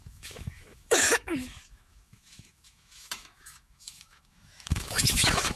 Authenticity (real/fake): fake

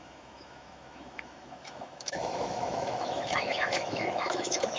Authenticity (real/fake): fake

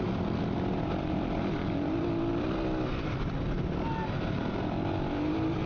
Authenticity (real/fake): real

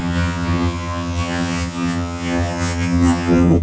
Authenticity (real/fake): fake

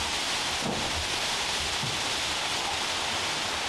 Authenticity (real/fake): real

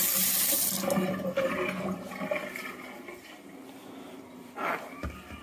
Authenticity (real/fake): real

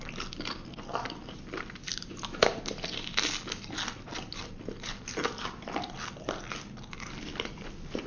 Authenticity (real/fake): real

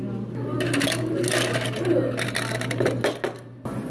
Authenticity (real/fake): real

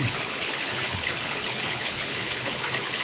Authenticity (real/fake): fake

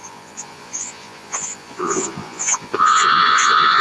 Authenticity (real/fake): fake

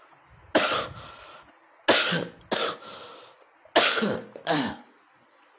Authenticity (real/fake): real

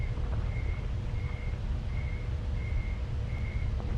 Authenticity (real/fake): real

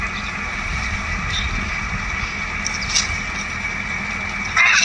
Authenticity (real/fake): real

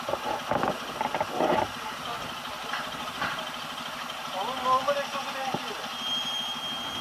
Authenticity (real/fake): real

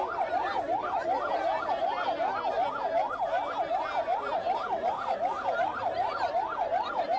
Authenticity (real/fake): real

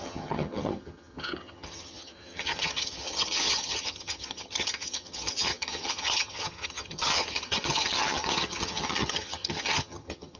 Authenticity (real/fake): fake